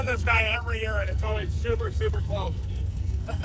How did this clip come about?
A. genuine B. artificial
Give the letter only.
B